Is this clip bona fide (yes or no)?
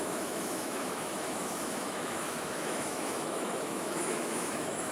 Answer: no